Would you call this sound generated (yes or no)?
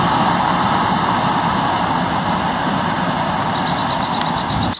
no